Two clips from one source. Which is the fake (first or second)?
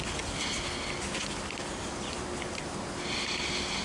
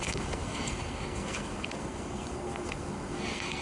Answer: second